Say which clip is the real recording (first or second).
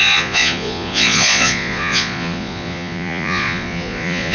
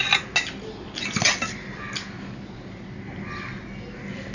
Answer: second